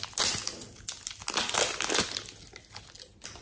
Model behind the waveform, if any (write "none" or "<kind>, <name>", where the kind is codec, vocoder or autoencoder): none